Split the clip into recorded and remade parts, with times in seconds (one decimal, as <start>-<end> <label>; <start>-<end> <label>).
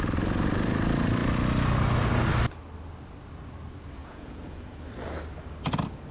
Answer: 0.0-4.0 recorded; 4.0-4.7 remade; 4.7-6.1 recorded